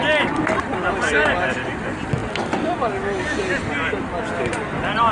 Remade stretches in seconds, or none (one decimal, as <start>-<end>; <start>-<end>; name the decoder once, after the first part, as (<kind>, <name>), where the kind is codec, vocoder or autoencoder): none